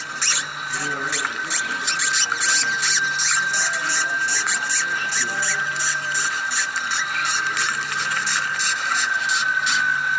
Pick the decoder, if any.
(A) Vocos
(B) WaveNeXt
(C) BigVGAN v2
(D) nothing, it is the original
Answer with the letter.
D